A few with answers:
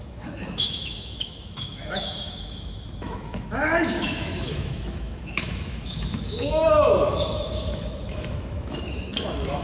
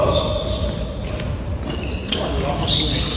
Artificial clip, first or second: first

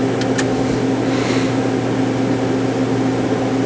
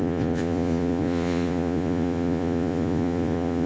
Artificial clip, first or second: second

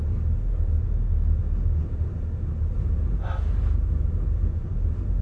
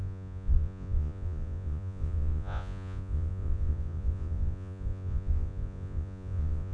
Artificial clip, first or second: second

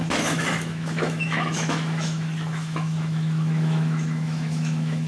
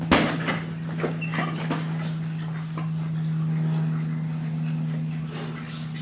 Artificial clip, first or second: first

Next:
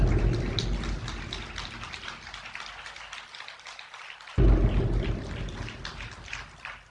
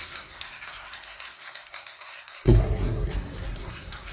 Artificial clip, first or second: second